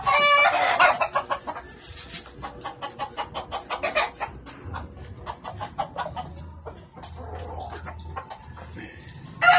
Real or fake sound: real